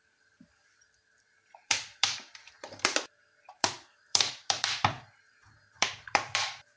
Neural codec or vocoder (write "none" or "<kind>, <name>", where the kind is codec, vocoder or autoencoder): vocoder, BigVGAN v2